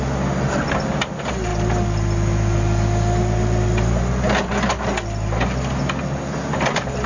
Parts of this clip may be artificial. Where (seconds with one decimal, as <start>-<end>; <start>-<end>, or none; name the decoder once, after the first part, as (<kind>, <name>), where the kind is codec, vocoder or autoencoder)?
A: none